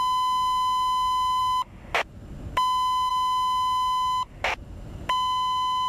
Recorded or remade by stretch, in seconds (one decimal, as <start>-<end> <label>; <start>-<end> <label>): 0.0-5.9 recorded